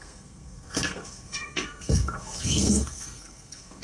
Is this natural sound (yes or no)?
no